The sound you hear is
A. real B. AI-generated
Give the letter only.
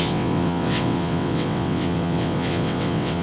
B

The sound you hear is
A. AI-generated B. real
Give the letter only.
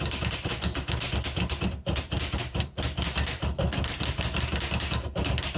B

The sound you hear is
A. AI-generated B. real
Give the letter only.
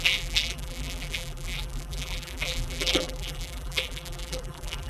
A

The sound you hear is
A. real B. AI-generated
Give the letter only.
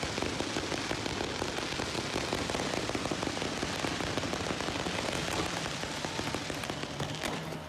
A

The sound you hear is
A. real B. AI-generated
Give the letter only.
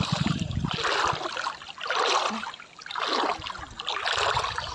A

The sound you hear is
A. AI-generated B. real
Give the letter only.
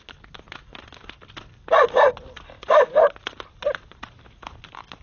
B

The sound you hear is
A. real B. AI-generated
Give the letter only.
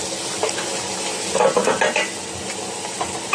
A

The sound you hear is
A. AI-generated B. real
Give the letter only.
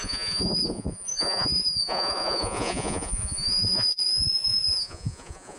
A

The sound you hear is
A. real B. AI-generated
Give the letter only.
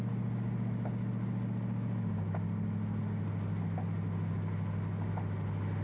A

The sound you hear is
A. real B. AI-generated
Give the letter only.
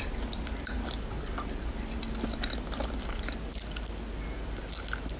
A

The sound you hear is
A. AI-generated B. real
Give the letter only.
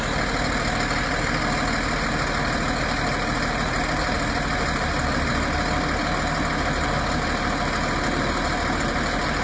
B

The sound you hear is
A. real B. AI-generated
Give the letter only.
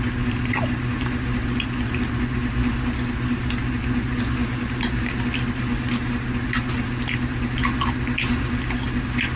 A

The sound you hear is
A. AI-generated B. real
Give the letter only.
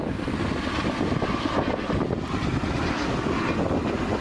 B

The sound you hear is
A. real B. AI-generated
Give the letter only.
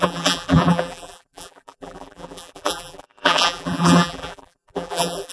B